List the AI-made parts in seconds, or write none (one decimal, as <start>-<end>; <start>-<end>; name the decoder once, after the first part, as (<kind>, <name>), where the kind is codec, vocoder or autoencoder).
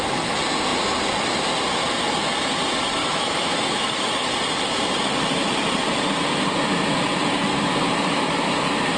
3.0-4.3 (autoencoder, DAC-VAE); 7.5-8.6